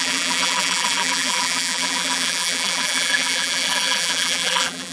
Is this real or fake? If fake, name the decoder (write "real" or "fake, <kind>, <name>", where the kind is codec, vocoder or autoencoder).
fake, vocoder, BigVGAN v2